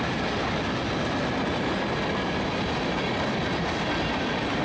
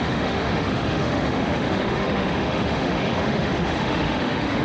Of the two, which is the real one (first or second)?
first